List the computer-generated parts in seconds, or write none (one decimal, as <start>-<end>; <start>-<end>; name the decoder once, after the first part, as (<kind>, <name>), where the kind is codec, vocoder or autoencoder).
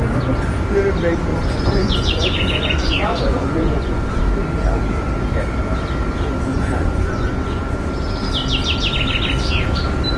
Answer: 1.3-4.2 (vocoder, Vocos); 6.5-7.9